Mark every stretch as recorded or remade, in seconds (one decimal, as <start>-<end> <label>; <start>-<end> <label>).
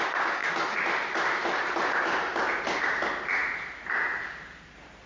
0.0-5.1 recorded